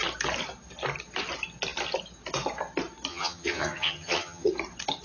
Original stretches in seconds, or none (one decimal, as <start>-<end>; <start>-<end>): 0.0-3.1; 4.5-5.0